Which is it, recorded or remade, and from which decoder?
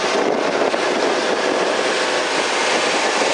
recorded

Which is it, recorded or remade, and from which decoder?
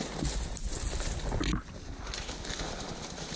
recorded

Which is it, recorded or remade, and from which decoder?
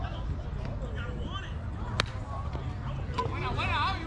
recorded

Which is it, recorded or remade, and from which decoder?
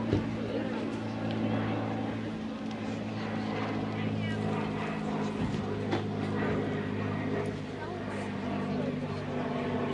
recorded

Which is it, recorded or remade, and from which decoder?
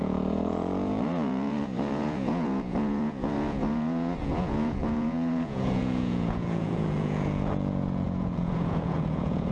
remade, vocoder, Vocos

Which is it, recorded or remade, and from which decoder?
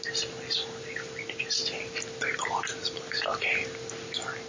recorded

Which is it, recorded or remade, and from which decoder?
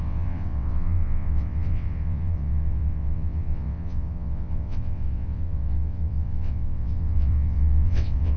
remade, vocoder, WaveNeXt